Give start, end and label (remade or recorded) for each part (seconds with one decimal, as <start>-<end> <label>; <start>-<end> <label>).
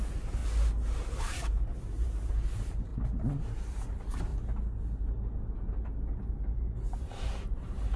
0.0-0.4 remade; 0.4-1.2 recorded; 1.2-2.9 remade; 2.9-3.7 recorded; 3.7-4.3 remade; 4.3-6.3 recorded; 6.3-8.0 remade